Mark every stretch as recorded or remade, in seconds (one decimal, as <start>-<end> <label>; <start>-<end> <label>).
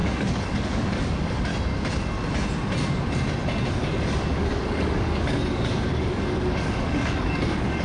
0.0-1.5 remade; 1.5-3.7 recorded; 3.7-7.8 remade